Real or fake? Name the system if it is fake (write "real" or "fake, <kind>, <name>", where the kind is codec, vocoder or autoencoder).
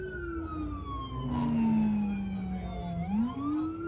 real